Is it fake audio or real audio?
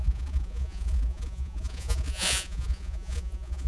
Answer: fake